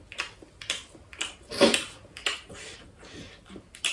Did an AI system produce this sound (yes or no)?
no